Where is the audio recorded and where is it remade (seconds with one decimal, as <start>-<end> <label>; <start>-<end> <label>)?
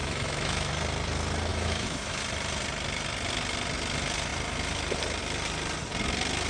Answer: 0.0-0.7 remade; 0.7-1.5 recorded; 1.5-2.2 remade; 2.2-6.5 recorded